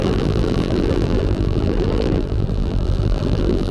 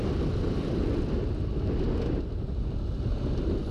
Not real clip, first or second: first